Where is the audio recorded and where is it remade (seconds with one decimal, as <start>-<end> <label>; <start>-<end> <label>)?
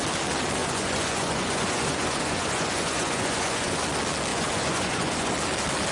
0.0-0.6 recorded; 0.6-3.8 remade; 3.8-4.3 recorded; 4.3-5.3 remade; 5.3-5.9 recorded